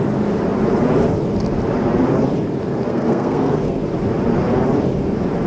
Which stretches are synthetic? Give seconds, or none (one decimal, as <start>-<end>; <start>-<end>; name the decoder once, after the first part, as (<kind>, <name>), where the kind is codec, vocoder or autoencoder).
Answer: 2.9-3.8 (codec, SNAC)